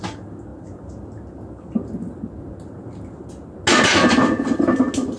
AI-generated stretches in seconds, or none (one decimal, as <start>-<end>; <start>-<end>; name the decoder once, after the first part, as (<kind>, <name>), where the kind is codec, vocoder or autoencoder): none